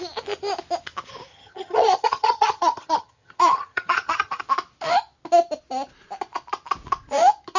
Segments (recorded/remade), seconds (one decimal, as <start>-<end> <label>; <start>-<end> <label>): 0.0-1.3 recorded; 1.3-4.4 remade; 4.4-7.6 recorded